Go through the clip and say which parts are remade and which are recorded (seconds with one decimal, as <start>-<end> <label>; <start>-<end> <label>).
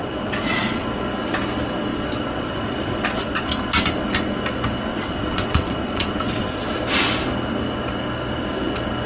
0.0-0.9 remade; 0.9-1.9 recorded; 1.9-3.5 remade; 3.5-4.9 recorded; 4.9-6.8 remade; 6.8-9.1 recorded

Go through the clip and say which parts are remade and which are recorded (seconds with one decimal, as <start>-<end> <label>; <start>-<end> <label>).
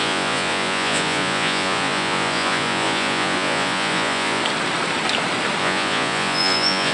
0.0-4.4 remade; 4.4-5.6 recorded; 5.6-6.9 remade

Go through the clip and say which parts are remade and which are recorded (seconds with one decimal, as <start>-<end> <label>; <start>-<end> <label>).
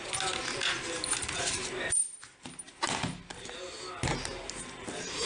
0.0-5.3 recorded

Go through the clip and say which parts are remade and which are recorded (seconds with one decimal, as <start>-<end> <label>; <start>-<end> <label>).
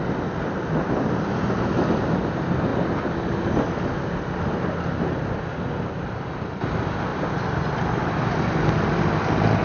0.0-9.6 recorded